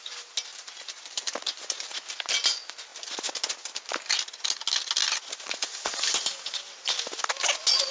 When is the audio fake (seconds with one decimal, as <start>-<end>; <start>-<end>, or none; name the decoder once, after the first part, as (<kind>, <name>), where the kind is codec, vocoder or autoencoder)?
0.5-1.9 (vocoder, BigVGAN v2)